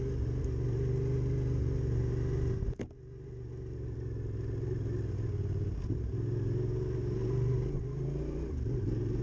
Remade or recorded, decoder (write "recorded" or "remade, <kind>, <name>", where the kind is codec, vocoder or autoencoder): recorded